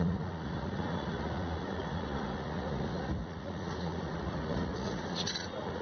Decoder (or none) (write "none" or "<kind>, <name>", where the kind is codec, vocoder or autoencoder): vocoder, Vocos